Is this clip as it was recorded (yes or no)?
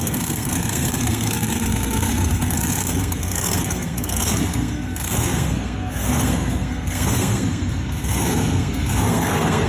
no